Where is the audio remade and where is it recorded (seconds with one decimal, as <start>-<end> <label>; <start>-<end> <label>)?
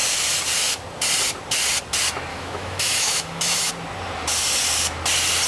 0.0-2.3 recorded; 2.3-3.7 remade; 3.7-5.5 recorded